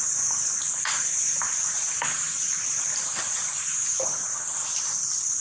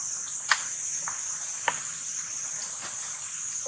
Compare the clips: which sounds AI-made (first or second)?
first